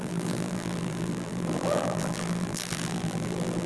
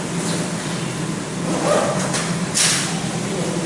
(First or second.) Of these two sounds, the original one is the second